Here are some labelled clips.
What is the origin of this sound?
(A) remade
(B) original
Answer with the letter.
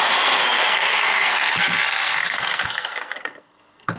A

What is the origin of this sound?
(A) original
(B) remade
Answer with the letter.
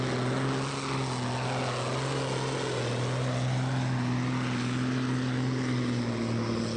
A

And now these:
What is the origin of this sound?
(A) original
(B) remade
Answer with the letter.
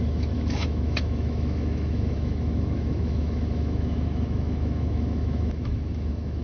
B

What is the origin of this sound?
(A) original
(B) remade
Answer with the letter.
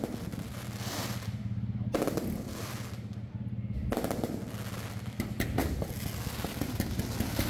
A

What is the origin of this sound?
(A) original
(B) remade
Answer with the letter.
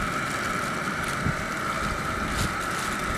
A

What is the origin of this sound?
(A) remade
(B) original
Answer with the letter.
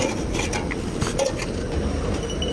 B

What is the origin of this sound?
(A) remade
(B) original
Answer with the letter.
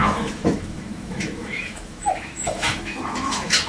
A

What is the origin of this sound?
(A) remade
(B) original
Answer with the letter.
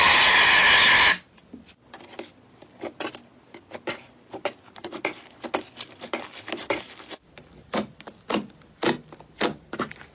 B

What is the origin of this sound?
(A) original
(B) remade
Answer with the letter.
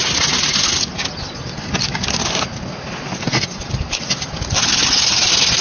A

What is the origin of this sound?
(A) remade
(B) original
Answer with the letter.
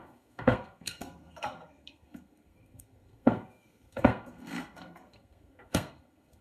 A